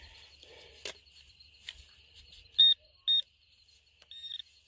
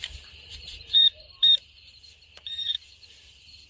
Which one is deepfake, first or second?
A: second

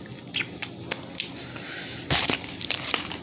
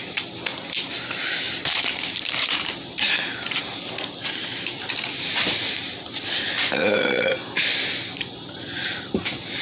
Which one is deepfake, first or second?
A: second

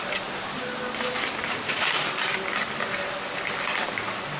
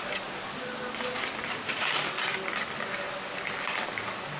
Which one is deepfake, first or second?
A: first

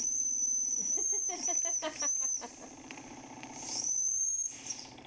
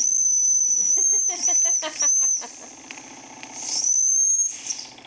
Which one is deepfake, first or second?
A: first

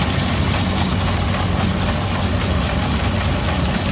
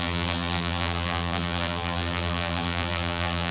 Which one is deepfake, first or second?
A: second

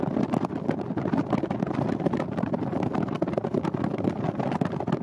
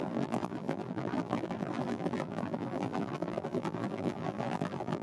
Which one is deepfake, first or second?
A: second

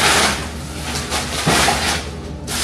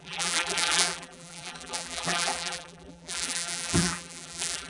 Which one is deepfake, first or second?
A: second